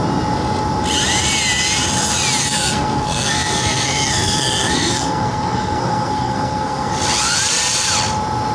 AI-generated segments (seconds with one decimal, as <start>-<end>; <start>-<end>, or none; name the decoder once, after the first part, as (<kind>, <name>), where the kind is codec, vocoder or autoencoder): 2.4-6.9 (codec, SNAC)